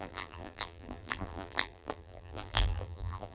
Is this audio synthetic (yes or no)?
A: yes